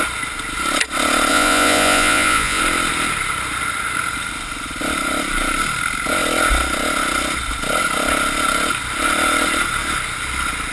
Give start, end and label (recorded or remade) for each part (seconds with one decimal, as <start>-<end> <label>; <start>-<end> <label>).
0.0-1.3 recorded; 1.3-2.6 remade; 2.6-10.7 recorded